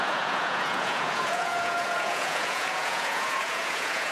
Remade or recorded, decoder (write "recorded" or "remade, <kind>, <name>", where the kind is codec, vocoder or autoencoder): remade, vocoder, Vocos